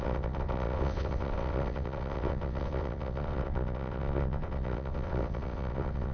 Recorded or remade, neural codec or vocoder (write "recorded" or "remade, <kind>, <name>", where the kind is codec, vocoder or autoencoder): remade, vocoder, WaveNeXt